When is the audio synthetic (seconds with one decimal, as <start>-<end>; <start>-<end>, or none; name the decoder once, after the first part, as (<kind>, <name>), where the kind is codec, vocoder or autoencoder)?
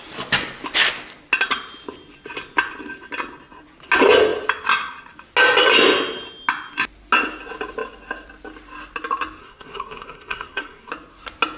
9.4-10.9 (codec, SNAC)